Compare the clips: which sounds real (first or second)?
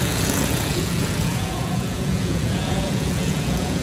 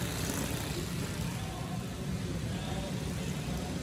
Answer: second